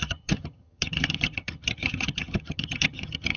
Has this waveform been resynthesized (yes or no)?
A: yes